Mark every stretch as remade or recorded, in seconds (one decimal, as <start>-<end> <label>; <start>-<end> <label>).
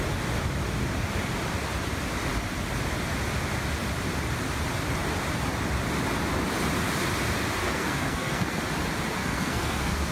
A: 0.0-7.6 recorded; 7.6-8.6 remade; 8.6-9.2 recorded; 9.2-10.1 remade